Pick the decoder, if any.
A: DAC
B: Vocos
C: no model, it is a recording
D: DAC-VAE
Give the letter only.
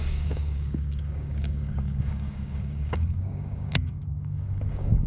A